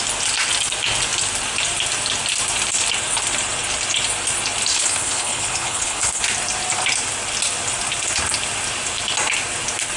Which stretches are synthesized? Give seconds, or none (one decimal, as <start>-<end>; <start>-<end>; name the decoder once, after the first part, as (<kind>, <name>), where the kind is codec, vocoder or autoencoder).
4.7-6.2 (codec, HILCodec)